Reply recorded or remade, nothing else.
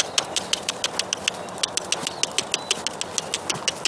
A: recorded